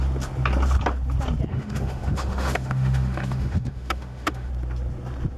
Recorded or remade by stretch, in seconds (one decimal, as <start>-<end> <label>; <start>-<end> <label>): 0.0-1.5 recorded; 1.5-4.5 remade; 4.5-5.4 recorded